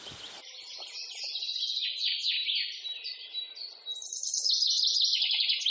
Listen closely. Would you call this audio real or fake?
real